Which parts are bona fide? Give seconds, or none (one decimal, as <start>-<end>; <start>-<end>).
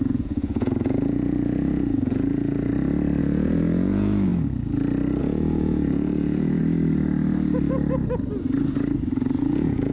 2.7-3.2; 4.3-5.2; 6.6-9.4